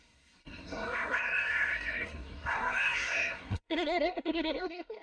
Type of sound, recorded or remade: remade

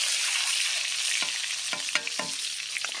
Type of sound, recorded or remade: recorded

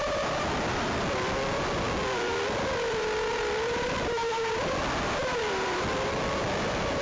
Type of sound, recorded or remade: remade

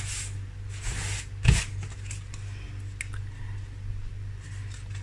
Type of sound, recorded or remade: recorded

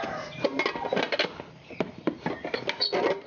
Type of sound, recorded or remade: recorded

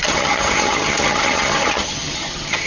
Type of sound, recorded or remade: remade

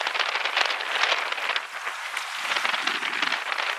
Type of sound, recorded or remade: recorded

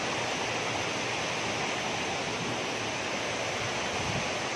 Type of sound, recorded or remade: recorded